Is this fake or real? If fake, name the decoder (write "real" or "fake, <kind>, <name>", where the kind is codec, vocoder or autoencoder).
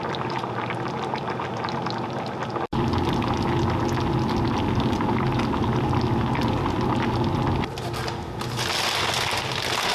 real